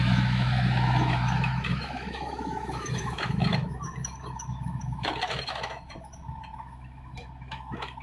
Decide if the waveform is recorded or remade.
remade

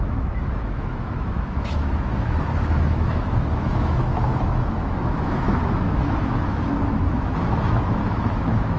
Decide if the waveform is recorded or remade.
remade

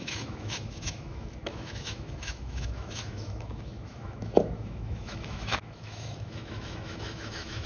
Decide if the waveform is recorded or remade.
remade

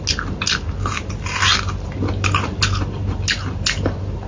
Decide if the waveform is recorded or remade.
recorded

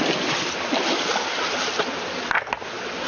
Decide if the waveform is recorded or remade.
recorded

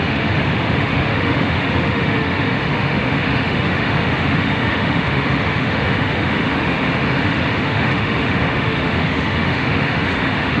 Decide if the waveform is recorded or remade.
remade